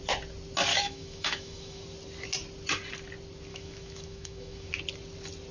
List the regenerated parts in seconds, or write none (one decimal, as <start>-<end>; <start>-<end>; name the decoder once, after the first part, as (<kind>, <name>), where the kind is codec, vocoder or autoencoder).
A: 0.7-1.8 (autoencoder, DAC-VAE); 3.5-4.7